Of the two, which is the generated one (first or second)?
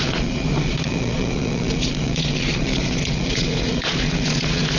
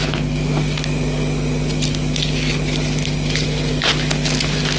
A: first